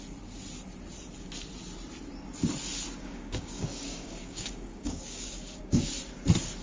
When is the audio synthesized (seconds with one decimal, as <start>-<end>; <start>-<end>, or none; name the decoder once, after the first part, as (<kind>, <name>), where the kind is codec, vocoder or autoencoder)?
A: 3.0-5.9 (codec, DAC)

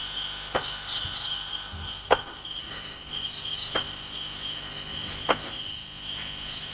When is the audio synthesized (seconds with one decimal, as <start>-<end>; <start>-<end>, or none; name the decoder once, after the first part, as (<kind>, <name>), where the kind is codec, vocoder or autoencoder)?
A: none

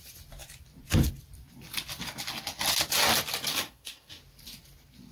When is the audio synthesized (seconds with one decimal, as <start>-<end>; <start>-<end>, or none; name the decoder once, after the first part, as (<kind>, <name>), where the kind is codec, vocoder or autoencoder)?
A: 3.5-4.2 (codec, DAC)